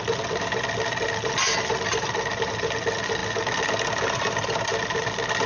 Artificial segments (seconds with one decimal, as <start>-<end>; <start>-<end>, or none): none